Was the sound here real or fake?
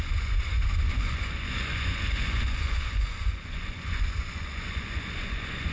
fake